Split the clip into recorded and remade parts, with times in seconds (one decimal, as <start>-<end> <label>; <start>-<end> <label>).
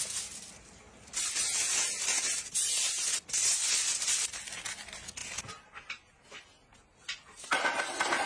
0.0-8.3 recorded